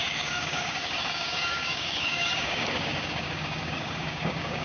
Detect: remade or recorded remade